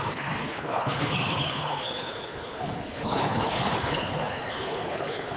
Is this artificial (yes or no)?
yes